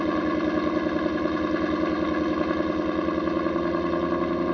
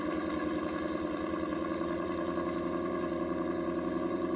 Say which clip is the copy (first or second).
second